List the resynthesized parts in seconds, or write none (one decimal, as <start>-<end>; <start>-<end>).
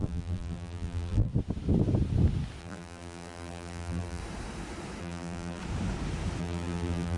0.0-1.3; 2.6-4.2; 5.0-5.6; 6.4-7.2